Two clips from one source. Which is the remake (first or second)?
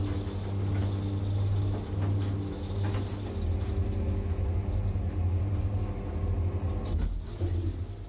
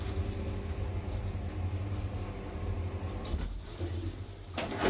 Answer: second